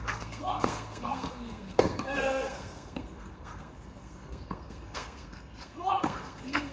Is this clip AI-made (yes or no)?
yes